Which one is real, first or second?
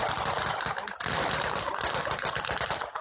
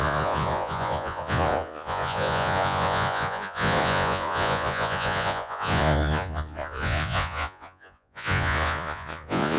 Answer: first